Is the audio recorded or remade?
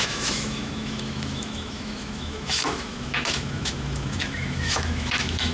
remade